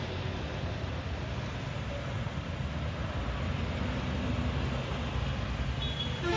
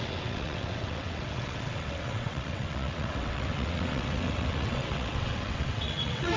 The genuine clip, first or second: first